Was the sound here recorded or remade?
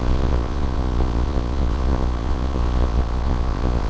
remade